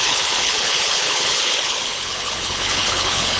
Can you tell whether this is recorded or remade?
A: remade